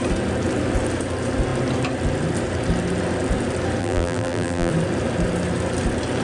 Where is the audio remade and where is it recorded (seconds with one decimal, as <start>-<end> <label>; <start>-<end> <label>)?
0.0-3.8 recorded; 3.8-4.7 remade; 4.7-6.2 recorded